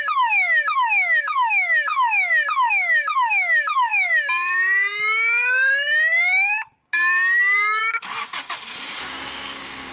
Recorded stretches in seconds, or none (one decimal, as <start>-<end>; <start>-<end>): 1.9-2.7; 3.9-6.7; 7.8-9.0